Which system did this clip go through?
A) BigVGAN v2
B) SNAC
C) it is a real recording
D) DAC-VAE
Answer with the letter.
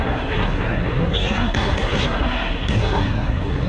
B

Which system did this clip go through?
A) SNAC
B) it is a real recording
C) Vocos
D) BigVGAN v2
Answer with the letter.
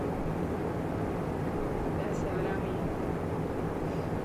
D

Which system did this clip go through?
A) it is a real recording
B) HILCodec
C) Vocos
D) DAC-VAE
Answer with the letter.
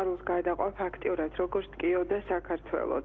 A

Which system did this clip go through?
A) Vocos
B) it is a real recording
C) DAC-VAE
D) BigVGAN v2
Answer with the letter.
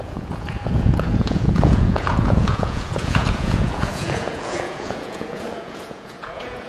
A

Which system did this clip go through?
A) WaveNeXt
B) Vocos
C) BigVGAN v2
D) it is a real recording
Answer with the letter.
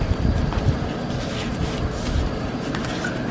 D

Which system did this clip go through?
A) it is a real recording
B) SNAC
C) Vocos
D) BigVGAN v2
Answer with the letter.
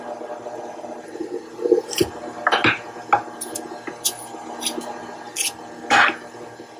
A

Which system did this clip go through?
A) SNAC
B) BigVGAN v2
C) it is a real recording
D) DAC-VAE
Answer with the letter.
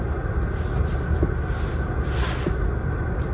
C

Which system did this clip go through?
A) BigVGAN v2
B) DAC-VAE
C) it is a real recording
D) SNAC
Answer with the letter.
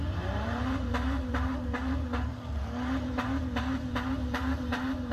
A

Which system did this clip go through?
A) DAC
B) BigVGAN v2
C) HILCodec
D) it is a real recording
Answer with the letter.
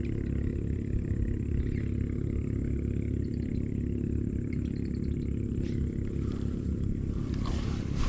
B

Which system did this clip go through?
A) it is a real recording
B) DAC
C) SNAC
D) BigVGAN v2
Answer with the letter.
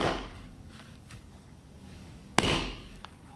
B